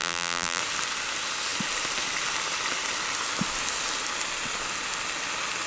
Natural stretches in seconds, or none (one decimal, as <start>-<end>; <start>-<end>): 0.6-5.7